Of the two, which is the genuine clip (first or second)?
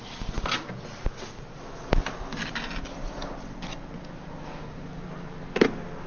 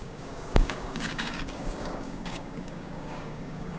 first